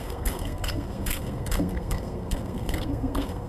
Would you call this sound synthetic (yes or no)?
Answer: yes